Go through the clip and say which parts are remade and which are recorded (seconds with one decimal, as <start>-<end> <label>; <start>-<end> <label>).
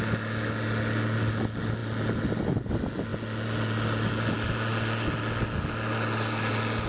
0.0-6.9 recorded